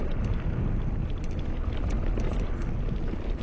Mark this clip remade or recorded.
recorded